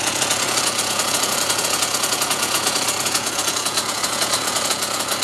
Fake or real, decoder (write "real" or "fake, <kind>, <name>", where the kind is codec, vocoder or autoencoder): fake, vocoder, Vocos